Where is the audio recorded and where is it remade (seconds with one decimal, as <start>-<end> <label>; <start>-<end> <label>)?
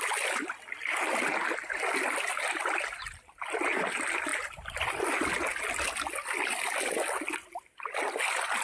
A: 0.0-8.6 recorded